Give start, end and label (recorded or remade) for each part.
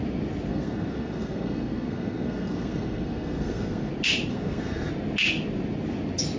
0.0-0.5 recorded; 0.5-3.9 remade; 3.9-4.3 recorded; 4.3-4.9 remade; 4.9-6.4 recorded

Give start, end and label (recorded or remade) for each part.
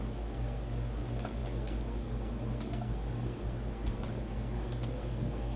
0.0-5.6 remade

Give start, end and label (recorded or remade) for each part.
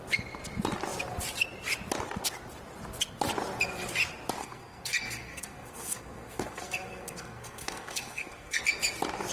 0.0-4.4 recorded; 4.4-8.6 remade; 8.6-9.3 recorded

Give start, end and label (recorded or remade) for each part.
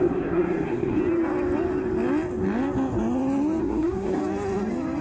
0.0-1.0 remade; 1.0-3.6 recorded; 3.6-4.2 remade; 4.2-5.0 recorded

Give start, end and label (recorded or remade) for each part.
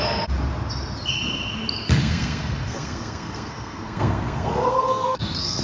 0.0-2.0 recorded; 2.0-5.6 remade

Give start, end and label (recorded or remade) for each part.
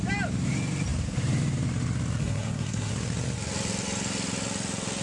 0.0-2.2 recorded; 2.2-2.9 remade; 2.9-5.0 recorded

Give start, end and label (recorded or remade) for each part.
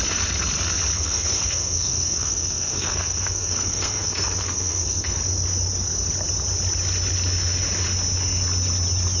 0.0-0.9 recorded; 0.9-5.2 remade; 5.2-9.2 recorded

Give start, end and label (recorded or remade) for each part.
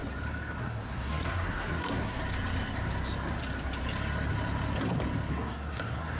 0.0-0.6 recorded; 0.6-2.2 remade; 2.2-5.3 recorded; 5.3-6.2 remade